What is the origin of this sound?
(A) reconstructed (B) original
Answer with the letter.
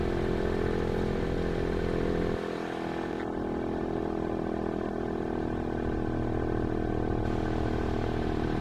B